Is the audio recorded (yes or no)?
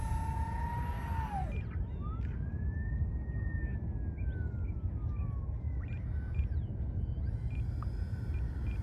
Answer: yes